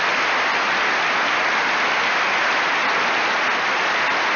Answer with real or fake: real